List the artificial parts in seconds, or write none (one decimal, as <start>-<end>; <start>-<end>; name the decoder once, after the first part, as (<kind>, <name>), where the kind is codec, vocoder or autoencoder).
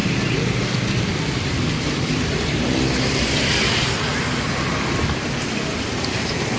1.0-4.1 (vocoder, BigVGAN v2); 5.0-6.6